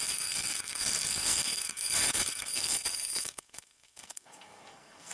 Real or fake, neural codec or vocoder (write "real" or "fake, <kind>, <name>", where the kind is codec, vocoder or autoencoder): fake, codec, SNAC